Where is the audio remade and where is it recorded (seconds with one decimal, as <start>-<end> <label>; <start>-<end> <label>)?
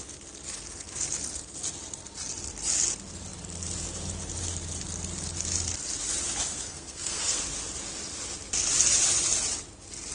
0.0-6.5 recorded; 6.5-7.4 remade; 7.4-10.1 recorded